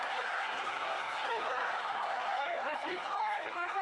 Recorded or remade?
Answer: remade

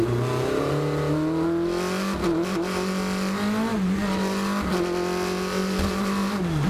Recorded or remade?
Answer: recorded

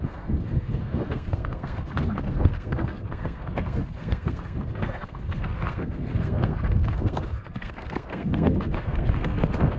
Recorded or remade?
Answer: remade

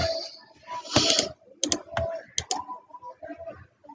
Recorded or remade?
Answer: recorded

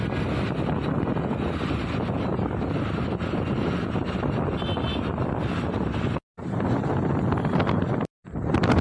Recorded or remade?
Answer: recorded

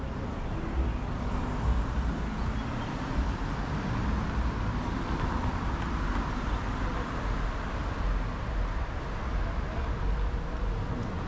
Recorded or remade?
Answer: recorded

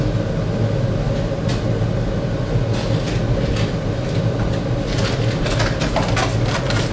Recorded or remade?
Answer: recorded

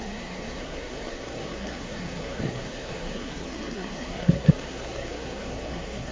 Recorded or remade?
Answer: remade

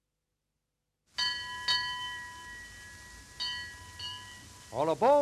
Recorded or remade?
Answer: recorded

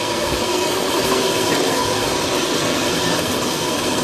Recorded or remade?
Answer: remade